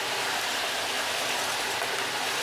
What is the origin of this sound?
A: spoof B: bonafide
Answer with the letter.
B